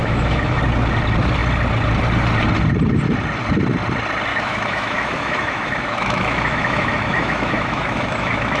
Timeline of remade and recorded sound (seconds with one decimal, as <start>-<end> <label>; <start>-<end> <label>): 0.0-0.6 remade; 0.6-4.3 recorded; 4.3-8.6 remade